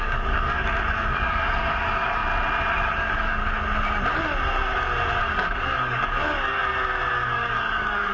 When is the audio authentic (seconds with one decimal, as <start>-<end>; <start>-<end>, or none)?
2.2-2.7; 3.4-5.2; 6.6-7.1